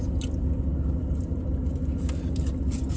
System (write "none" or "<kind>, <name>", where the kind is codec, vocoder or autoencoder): none